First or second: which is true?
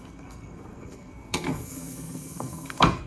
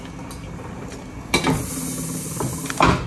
second